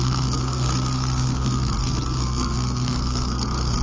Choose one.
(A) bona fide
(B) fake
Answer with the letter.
B